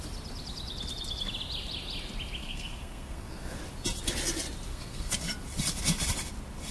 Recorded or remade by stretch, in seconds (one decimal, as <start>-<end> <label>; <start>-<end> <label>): 0.0-2.4 recorded; 2.4-3.6 remade; 3.6-4.7 recorded; 4.7-5.2 remade; 5.2-6.7 recorded